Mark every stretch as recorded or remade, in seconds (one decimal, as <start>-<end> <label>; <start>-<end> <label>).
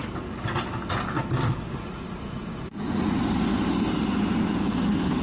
0.0-1.8 recorded; 1.8-3.2 remade; 3.2-5.2 recorded